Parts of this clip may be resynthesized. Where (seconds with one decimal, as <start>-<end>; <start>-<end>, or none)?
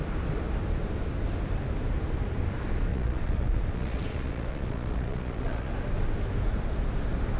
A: 2.9-5.7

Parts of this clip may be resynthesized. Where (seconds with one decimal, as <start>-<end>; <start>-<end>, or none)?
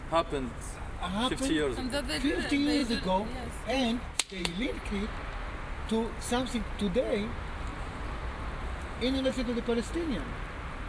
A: 2.8-5.1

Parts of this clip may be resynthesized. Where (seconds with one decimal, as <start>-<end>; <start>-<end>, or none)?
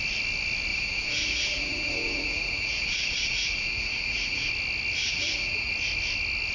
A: 0.7-4.5; 5.0-5.7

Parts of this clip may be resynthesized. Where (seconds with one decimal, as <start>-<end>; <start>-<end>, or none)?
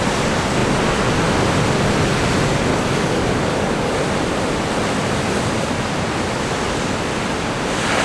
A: 2.7-3.9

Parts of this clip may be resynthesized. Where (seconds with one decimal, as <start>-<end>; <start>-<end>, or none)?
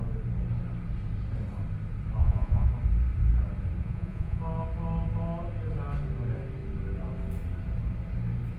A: 2.2-2.7; 3.8-4.4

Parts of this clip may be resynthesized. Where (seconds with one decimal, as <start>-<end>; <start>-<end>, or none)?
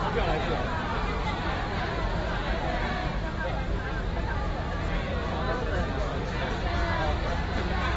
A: none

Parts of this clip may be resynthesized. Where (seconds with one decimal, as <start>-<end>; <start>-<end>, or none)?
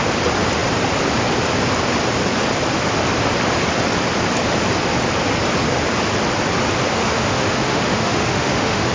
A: 7.0-8.9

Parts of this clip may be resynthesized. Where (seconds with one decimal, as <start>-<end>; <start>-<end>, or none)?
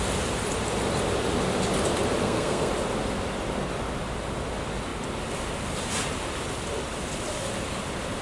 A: 2.2-2.7